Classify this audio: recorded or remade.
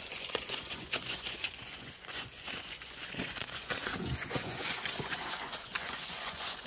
remade